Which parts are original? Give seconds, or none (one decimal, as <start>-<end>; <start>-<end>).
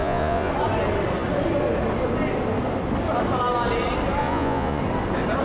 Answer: 0.5-4.2; 4.8-5.4